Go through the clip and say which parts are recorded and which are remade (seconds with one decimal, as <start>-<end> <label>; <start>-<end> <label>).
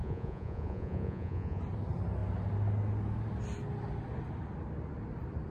0.0-1.6 remade; 1.6-5.5 recorded